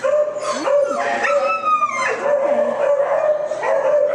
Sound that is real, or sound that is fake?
real